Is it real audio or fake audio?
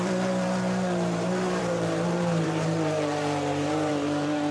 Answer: fake